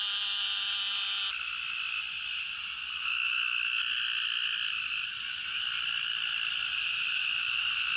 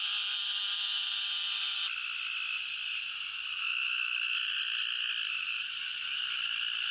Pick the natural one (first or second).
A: first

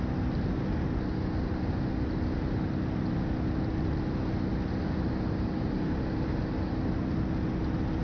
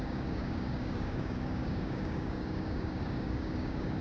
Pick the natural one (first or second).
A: first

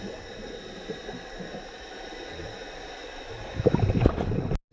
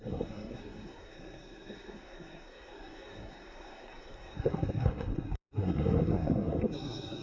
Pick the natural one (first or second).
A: first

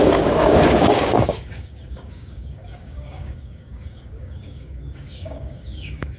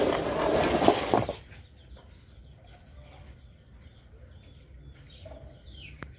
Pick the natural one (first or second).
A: second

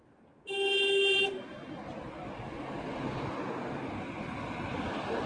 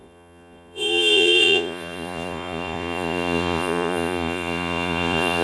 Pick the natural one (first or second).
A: first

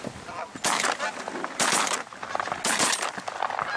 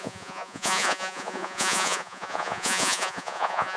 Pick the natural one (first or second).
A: first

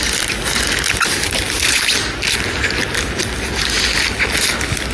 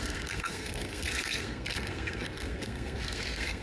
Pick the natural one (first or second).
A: first